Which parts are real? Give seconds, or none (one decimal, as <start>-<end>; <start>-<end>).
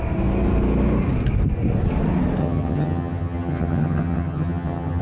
0.0-2.4